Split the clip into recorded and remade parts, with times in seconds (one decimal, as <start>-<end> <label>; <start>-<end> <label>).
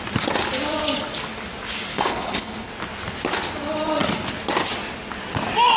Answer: 0.0-1.9 recorded; 1.9-2.7 remade; 2.7-5.8 recorded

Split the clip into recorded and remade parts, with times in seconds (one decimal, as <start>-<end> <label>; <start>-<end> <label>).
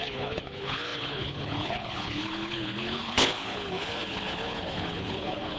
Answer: 0.0-5.6 remade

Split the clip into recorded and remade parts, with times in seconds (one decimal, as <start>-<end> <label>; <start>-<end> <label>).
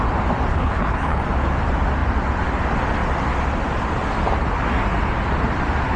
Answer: 0.0-0.5 recorded; 0.5-1.2 remade; 1.2-6.0 recorded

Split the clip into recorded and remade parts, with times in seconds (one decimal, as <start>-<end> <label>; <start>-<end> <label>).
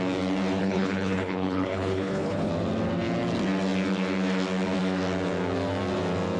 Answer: 0.0-0.6 recorded; 0.6-2.5 remade; 2.5-6.4 recorded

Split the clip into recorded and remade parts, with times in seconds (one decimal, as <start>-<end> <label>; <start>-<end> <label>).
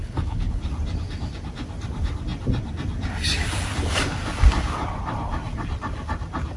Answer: 0.0-0.6 remade; 0.6-6.6 recorded